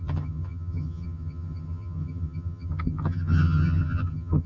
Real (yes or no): no